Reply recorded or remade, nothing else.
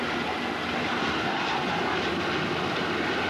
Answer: recorded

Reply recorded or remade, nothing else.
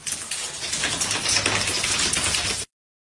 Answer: recorded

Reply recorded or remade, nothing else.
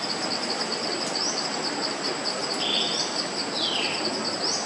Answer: recorded